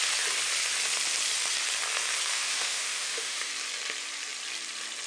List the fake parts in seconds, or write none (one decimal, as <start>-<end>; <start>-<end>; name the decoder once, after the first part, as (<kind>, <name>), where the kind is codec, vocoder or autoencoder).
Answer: 2.3-3.5 (autoencoder, DAC-VAE)